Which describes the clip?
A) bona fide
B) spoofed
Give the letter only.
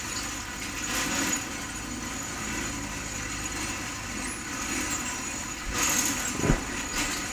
A